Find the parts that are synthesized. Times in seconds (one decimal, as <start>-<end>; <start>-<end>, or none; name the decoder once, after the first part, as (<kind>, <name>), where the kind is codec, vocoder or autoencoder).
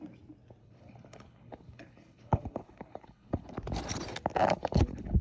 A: 0.6-3.5 (codec, HILCodec); 4.4-5.2